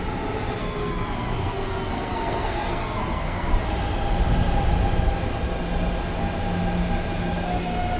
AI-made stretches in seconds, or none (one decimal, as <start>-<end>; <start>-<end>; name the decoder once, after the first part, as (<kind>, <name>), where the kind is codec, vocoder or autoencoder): 0.6-3.5 (codec, SNAC)